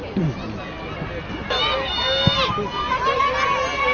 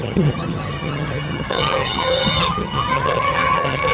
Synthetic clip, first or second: second